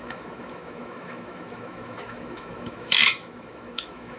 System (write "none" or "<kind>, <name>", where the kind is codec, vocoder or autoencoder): autoencoder, DAC-VAE